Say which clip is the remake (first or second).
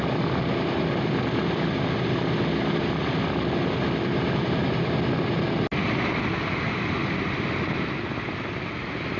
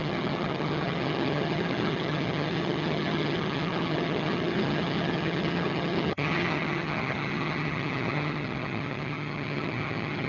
second